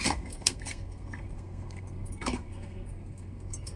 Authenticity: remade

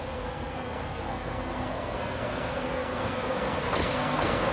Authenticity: remade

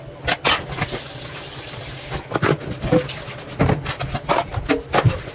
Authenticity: recorded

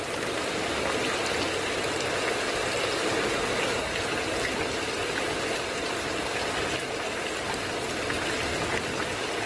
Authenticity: recorded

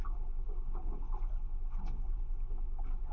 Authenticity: recorded